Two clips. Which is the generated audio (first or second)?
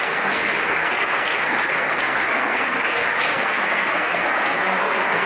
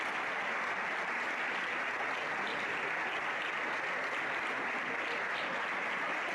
first